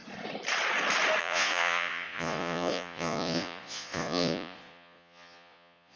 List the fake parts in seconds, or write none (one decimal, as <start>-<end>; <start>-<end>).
1.2-6.0